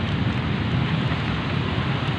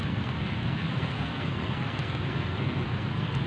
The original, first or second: first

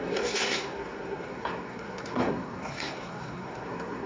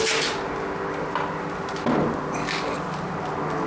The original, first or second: second